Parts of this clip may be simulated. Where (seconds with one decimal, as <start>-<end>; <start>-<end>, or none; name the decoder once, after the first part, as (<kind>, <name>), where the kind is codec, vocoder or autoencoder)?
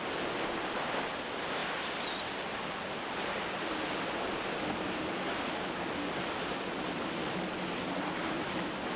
none